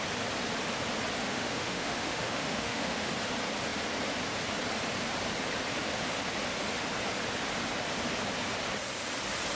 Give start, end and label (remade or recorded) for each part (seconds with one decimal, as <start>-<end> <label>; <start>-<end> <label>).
0.0-1.2 recorded; 1.2-3.1 remade; 3.1-9.6 recorded